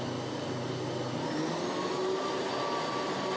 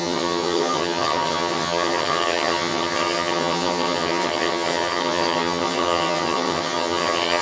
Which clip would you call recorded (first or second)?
first